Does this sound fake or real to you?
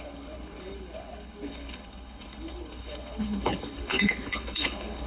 fake